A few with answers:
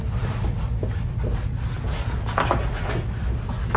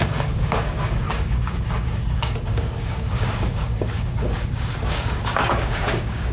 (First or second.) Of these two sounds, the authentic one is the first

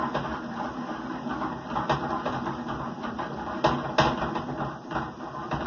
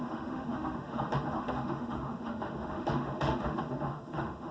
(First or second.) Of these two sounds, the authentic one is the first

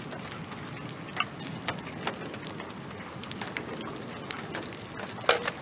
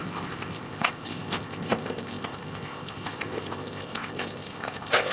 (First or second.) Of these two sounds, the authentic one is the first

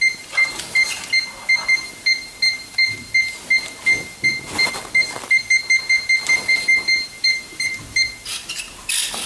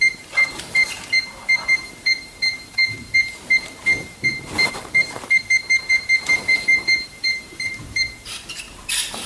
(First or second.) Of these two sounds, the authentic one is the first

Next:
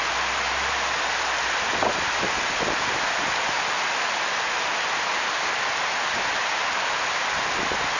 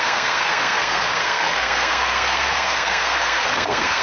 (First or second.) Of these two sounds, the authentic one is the first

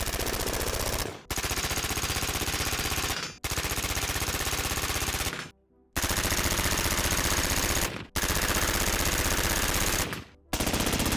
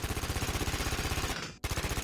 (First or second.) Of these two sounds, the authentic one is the first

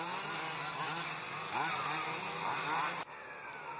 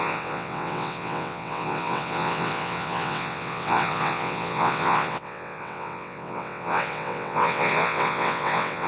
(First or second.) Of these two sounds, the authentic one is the first